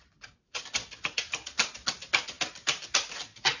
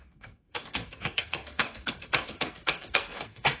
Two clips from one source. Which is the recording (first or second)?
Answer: first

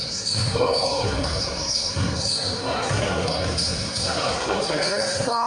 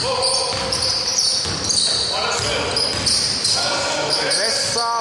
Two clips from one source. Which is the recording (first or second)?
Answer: second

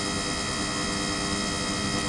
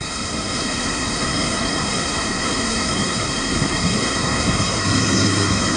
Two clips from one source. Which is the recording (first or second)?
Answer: first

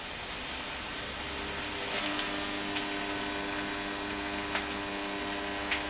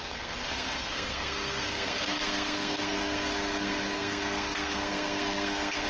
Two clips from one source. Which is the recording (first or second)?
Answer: first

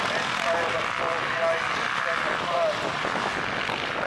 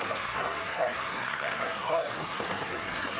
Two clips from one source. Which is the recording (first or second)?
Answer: first